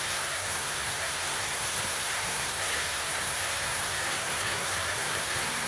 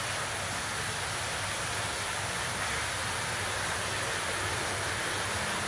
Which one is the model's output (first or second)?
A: first